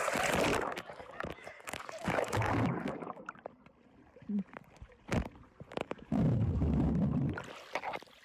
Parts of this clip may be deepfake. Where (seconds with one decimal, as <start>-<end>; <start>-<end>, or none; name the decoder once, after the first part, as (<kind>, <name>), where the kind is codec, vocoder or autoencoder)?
0.5-3.3 (codec, DAC); 5.8-6.9